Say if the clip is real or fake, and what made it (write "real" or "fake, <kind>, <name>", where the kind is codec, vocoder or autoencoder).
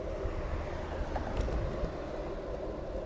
real